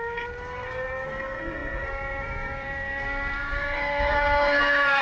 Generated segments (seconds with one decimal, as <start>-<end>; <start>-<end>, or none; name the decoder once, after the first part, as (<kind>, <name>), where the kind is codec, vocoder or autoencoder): 0.0-5.0 (codec, SNAC)